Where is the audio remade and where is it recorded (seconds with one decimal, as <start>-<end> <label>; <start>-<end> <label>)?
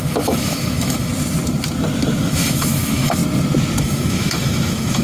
0.0-1.1 remade; 1.1-2.2 recorded; 2.2-3.2 remade; 3.2-3.8 recorded; 3.8-5.0 remade